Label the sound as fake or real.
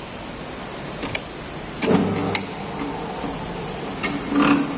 real